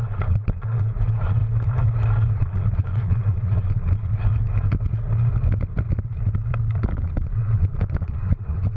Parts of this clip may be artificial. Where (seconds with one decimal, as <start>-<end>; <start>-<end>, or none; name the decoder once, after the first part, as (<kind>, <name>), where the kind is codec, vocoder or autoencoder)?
0.0-1.4 (vocoder, Vocos); 2.3-4.3; 7.0-8.8